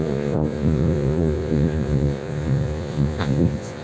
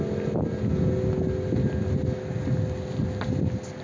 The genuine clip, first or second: second